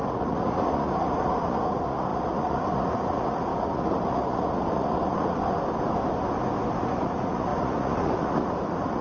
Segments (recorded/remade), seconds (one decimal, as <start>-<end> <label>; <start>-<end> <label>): 0.0-5.4 remade; 5.4-6.8 recorded; 6.8-9.0 remade